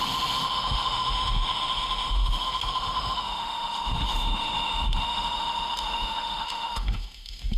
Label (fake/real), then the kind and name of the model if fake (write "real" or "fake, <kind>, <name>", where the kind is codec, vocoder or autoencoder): fake, autoencoder, DAC-VAE